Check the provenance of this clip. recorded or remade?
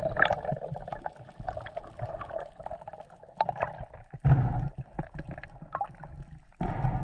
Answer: recorded